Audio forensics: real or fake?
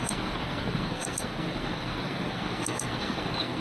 fake